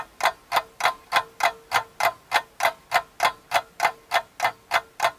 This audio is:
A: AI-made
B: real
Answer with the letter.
B